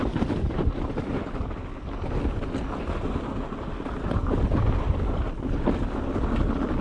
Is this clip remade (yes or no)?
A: no